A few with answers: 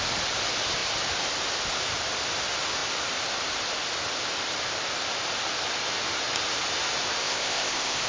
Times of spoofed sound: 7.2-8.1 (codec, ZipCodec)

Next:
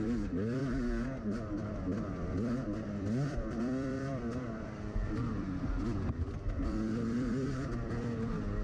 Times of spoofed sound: 0.0-0.6 (vocoder, BigVGAN v2); 1.7-8.6

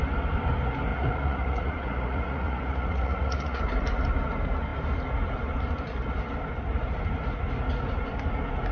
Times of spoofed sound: 0.9-3.6 (vocoder, Vocos)